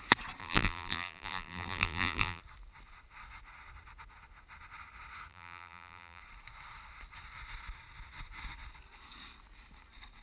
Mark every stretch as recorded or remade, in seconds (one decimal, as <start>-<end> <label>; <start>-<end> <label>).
0.0-0.4 recorded; 0.4-2.4 remade; 2.4-5.3 recorded; 5.3-6.2 remade; 6.2-10.2 recorded